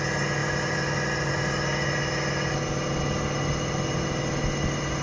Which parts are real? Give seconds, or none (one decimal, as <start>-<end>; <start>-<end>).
0.0-5.0